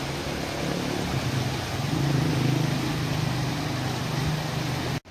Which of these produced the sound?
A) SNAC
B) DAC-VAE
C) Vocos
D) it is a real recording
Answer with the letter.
D